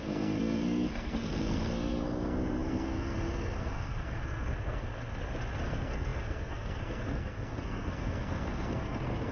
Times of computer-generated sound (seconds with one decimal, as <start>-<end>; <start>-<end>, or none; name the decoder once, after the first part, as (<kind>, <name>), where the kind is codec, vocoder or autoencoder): 0.0-4.9 (codec, SNAC); 5.6-9.3